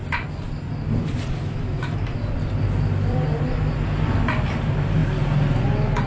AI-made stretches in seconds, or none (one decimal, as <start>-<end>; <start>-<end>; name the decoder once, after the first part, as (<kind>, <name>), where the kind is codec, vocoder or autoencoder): 0.0-3.7 (vocoder, BigVGAN v2)